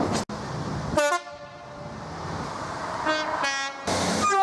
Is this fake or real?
real